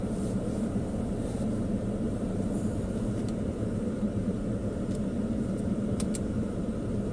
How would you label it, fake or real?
fake